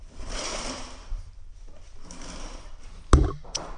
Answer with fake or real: real